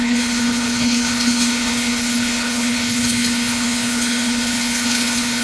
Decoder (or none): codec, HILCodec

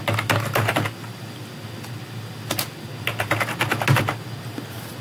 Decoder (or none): none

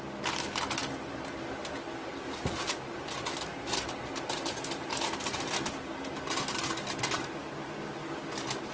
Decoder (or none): none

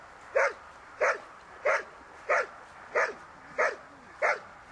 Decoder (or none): none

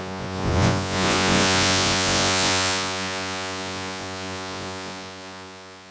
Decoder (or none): vocoder, Vocos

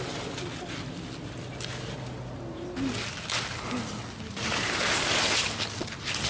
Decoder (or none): none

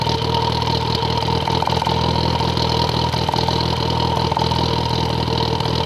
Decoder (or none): none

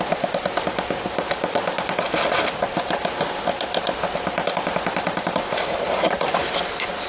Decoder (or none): none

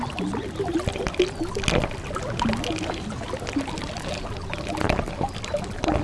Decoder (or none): none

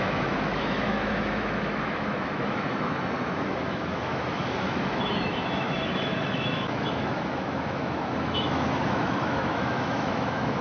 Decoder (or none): autoencoder, DAC-VAE